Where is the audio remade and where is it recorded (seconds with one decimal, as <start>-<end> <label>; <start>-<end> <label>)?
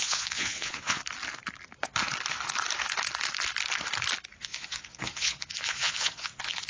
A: 0.0-1.0 remade; 1.0-4.4 recorded; 4.4-6.7 remade